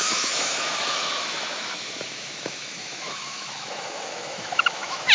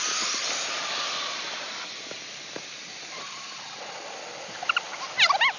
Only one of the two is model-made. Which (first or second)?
first